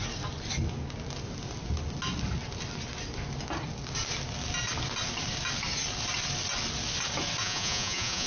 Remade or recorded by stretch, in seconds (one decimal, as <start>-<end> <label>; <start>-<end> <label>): 0.0-7.4 recorded; 7.4-8.3 remade